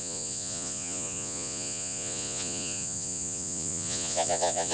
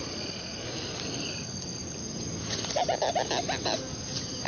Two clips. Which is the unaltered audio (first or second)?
second